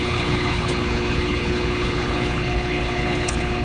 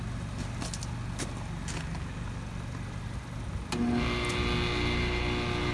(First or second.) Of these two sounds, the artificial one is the first